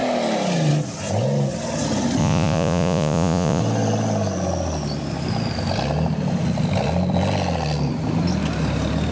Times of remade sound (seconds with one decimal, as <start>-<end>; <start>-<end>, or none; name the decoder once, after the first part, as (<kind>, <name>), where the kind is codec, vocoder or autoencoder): 2.2-3.6 (vocoder, Vocos)